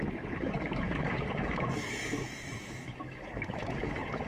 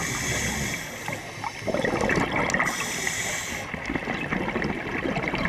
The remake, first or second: first